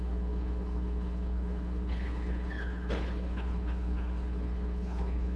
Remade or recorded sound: remade